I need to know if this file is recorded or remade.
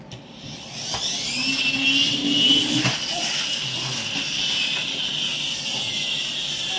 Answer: recorded